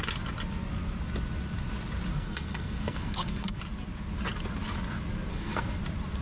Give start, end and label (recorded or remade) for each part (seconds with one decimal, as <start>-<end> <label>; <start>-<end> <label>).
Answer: 0.0-2.1 recorded; 2.1-3.6 remade; 3.6-5.3 recorded; 5.3-5.8 remade; 5.8-6.2 recorded